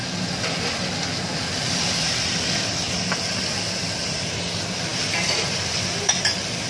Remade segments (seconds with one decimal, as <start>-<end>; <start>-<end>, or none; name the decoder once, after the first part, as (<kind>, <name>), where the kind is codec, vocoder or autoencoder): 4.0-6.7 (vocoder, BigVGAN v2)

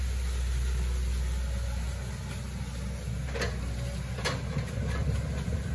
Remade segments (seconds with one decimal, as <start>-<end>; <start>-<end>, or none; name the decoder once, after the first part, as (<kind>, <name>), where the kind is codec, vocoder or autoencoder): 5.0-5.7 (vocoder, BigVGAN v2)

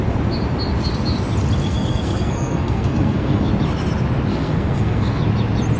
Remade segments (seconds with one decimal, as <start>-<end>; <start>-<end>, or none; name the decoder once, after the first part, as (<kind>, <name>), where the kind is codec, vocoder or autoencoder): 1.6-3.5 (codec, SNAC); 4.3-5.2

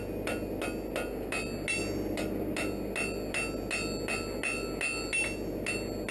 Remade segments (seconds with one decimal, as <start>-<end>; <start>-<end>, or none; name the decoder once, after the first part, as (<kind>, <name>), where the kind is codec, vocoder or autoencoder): none